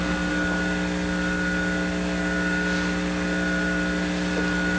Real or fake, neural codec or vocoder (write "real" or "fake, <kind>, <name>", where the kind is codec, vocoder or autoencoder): real